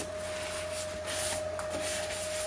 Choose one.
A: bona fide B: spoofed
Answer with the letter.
A